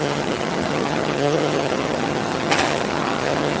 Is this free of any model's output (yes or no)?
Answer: no